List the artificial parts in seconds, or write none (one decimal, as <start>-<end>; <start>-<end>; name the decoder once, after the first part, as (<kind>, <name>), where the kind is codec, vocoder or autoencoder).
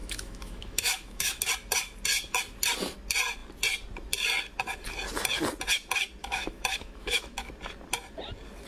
0.0-1.4 (autoencoder, DAC-VAE); 6.2-7.5